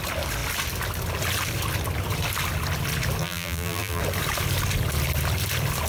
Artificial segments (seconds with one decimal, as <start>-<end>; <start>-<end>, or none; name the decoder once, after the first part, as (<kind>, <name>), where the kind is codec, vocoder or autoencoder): 3.2-4.0 (vocoder, BigVGAN v2)